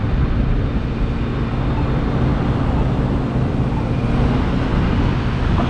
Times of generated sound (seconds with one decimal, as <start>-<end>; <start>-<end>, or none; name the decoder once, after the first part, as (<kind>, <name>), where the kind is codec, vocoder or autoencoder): none